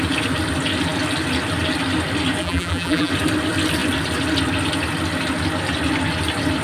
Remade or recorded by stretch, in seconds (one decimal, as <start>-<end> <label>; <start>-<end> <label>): 0.0-2.4 recorded; 2.4-3.1 remade; 3.1-6.6 recorded